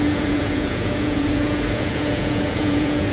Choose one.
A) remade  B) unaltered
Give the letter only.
A